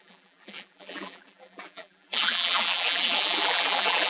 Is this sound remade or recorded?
remade